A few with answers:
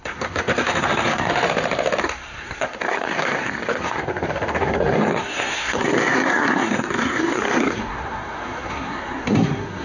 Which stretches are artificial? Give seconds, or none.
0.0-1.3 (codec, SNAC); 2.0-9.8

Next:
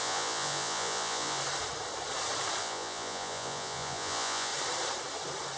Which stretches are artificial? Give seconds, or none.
0.0-1.4 (vocoder, Vocos); 2.6-4.5

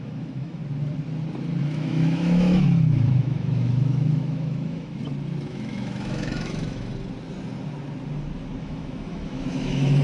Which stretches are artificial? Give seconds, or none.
0.0-0.6 (autoencoder, DAC-VAE); 1.6-5.0; 5.5-6.9; 8.6-10.0

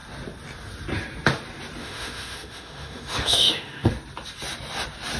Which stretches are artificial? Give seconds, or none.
1.8-3.9 (autoencoder, DAC-VAE)

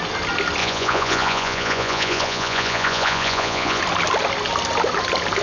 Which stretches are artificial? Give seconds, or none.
0.6-3.8 (vocoder, Vocos)

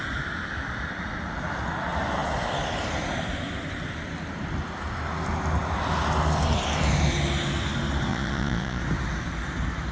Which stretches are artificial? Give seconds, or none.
8.1-8.8 (vocoder, Vocos)